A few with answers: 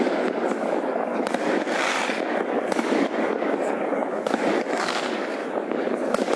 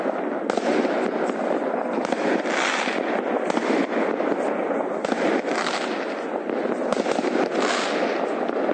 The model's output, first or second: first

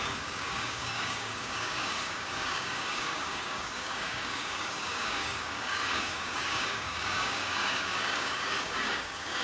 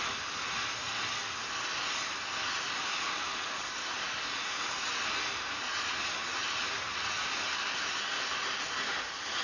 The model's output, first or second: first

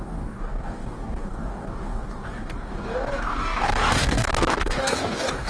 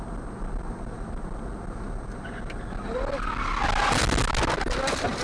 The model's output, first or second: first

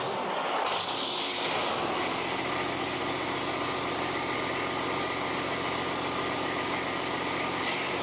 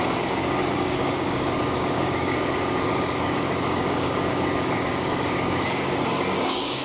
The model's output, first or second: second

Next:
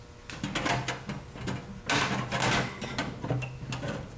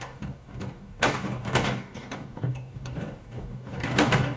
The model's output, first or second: second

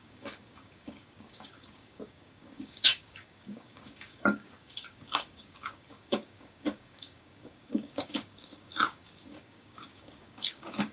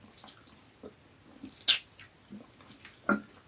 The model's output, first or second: first